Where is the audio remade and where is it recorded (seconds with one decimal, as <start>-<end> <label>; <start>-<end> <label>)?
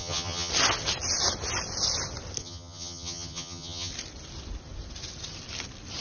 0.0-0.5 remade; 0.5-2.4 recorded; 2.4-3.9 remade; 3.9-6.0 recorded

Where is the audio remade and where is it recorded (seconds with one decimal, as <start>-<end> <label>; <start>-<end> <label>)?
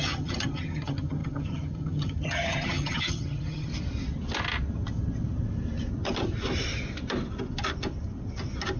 0.0-3.7 remade; 3.7-8.8 recorded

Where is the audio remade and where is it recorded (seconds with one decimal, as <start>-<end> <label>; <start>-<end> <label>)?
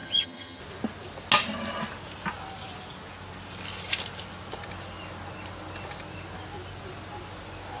0.0-0.6 remade; 0.6-7.8 recorded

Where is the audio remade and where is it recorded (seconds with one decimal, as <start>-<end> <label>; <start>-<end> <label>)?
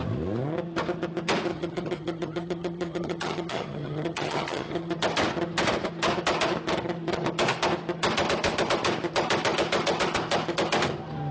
0.0-1.5 recorded; 1.5-4.9 remade; 4.9-11.3 recorded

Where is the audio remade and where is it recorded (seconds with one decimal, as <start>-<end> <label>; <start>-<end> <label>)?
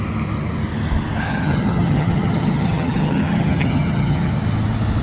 0.0-1.3 recorded; 1.3-4.3 remade; 4.3-5.0 recorded